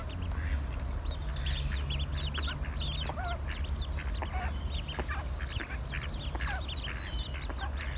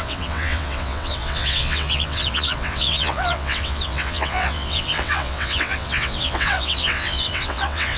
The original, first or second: first